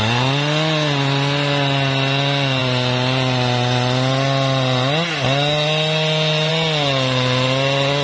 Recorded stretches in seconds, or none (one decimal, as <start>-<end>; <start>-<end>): 0.0-8.0